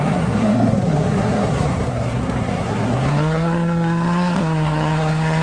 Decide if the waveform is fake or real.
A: fake